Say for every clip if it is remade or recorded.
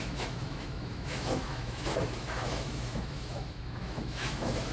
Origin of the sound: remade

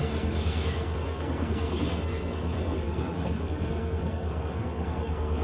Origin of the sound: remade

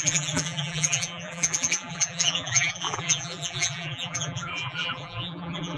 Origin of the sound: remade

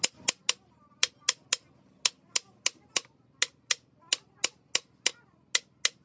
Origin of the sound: recorded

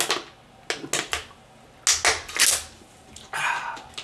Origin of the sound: recorded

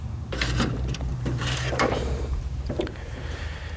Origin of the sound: remade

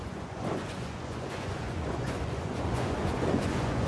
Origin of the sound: remade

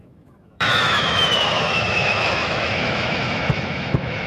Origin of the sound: remade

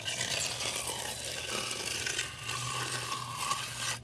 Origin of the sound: recorded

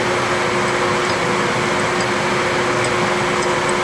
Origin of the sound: recorded